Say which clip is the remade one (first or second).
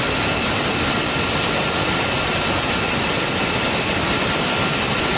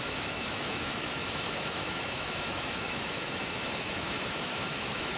second